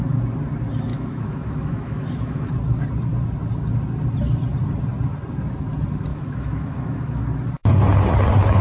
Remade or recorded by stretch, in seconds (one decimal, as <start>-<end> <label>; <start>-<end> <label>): 0.0-0.9 recorded; 0.9-2.5 remade; 2.5-6.1 recorded; 6.1-7.2 remade; 7.2-8.6 recorded